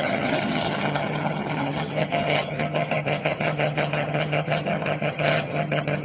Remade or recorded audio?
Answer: remade